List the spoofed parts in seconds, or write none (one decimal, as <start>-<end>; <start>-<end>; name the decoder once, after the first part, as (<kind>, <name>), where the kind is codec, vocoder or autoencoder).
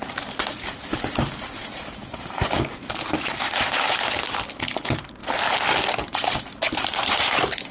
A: 0.0-5.2 (vocoder, BigVGAN v2); 6.0-7.7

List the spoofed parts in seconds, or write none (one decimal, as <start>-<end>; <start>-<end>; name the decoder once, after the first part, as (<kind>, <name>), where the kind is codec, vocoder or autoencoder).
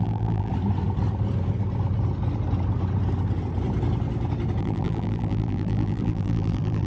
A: 0.0-0.5 (vocoder, BigVGAN v2); 4.6-6.9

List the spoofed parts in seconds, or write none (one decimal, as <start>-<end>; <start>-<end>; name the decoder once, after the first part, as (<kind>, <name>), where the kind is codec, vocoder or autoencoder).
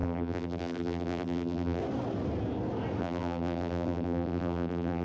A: 0.0-1.8 (vocoder, BigVGAN v2); 3.0-5.0